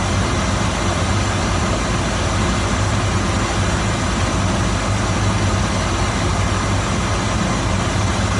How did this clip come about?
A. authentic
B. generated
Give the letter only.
A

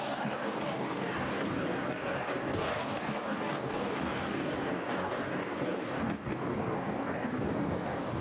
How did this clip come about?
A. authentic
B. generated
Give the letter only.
B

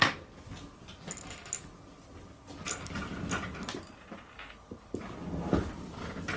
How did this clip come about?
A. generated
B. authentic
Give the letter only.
B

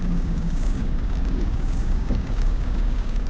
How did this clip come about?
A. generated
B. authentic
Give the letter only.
A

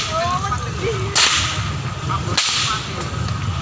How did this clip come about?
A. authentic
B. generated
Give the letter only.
A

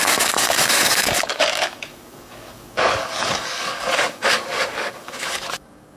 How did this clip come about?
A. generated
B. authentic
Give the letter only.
A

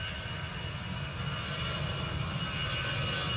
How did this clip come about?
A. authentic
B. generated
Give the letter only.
A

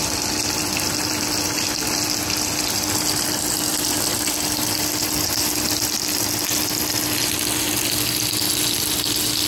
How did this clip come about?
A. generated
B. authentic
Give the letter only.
B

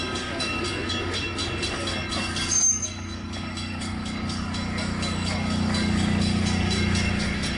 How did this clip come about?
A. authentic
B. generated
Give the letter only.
B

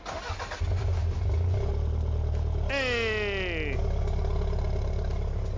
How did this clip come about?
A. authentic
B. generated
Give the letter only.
A